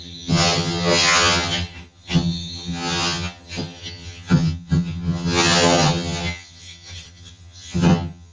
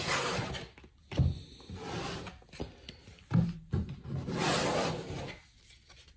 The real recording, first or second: second